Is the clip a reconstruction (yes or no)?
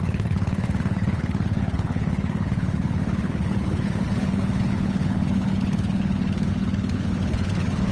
yes